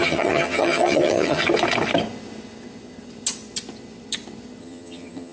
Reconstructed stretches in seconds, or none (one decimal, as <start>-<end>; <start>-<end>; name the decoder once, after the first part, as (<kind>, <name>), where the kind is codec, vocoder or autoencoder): 0.0-1.4 (vocoder, HiFi-GAN); 4.6-5.3

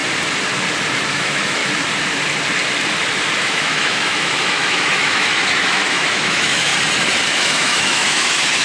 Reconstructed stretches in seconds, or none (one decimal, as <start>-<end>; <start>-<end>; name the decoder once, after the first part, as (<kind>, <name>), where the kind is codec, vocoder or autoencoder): 1.1-1.6 (autoencoder, DAC-VAE); 3.4-6.7; 7.3-8.6

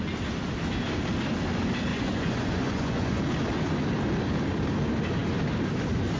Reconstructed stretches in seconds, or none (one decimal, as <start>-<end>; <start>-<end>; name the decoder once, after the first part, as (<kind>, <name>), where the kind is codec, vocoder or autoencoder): 1.9-3.2 (vocoder, Vocos)